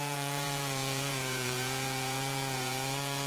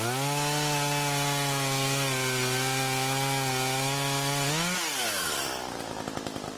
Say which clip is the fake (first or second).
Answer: first